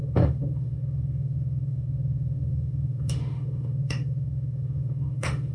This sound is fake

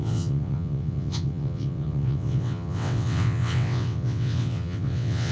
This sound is fake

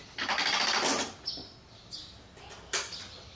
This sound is real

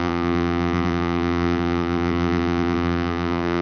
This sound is fake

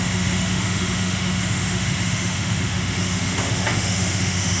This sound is fake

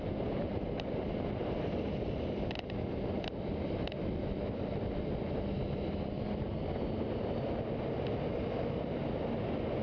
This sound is real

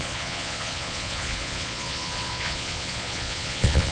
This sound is fake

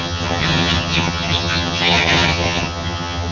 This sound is fake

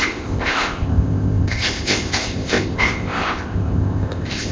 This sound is fake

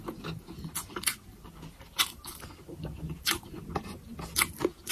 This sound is real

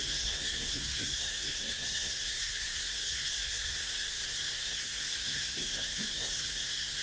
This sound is fake